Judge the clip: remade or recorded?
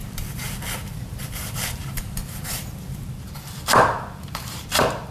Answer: remade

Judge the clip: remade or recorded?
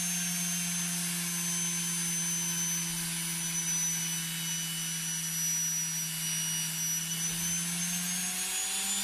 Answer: recorded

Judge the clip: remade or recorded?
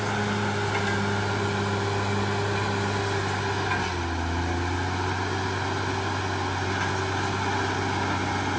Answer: recorded